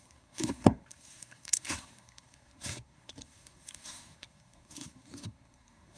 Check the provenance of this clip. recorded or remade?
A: remade